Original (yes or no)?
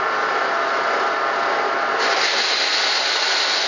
yes